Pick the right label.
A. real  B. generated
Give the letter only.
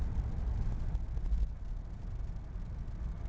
A